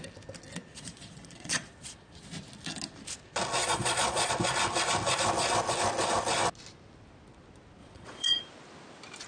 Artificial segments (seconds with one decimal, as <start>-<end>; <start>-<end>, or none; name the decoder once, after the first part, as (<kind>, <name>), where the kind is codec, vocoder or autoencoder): 0.7-2.3 (vocoder, Vocos); 3.6-4.3; 7.8-8.4